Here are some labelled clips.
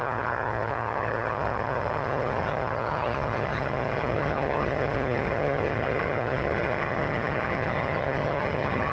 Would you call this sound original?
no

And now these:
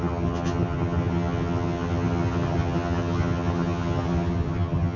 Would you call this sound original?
no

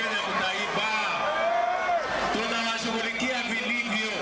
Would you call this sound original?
yes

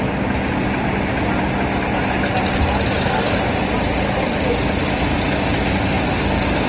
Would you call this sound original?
yes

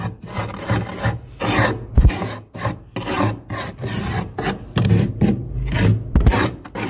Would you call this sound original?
yes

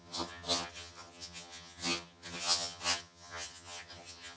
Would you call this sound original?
no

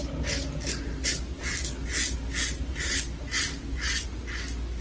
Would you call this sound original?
yes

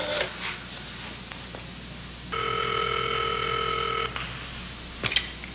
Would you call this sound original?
yes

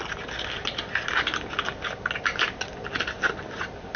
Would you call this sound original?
yes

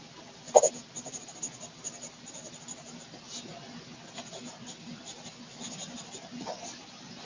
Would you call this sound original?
yes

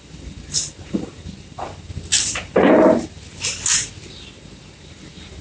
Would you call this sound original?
yes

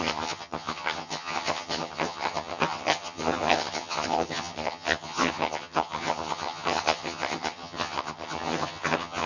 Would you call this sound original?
no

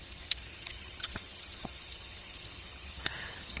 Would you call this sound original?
no